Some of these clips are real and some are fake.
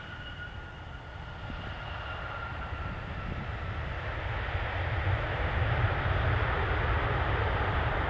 real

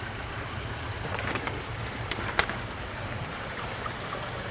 fake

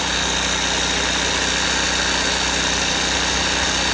real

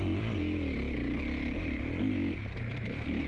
fake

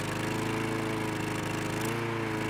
real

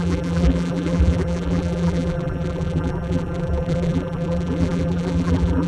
fake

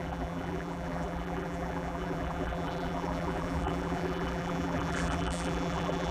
fake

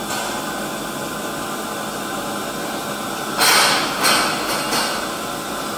real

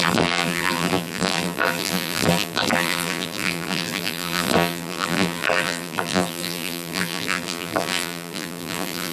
fake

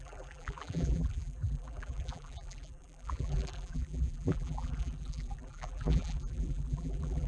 fake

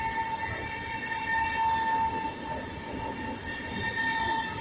real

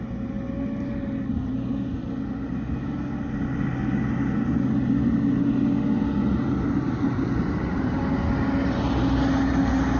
real